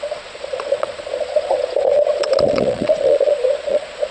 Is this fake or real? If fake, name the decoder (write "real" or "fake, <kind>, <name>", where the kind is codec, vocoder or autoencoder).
fake, vocoder, Vocos